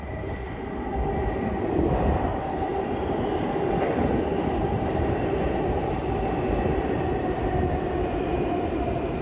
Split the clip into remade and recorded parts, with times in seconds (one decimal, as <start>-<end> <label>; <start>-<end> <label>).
0.0-9.2 recorded